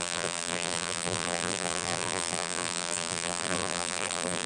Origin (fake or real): fake